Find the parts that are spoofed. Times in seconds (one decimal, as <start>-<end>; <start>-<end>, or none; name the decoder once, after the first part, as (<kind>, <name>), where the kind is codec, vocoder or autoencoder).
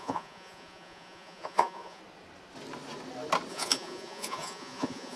0.0-2.0 (vocoder, Vocos); 3.5-5.2